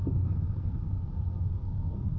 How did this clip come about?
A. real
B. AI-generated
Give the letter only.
B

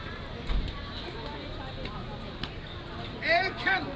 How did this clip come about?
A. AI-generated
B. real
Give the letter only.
B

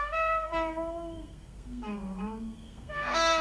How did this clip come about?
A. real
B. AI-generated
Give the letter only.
B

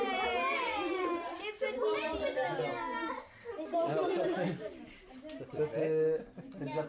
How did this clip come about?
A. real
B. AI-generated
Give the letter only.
A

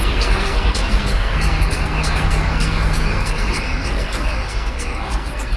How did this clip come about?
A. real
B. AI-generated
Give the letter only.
B